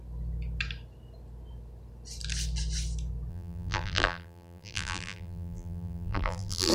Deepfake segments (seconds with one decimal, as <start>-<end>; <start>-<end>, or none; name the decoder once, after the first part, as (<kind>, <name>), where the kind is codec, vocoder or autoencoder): 3.3-6.7 (vocoder, BigVGAN v2)